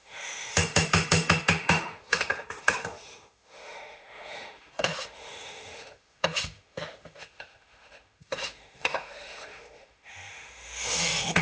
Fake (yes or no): yes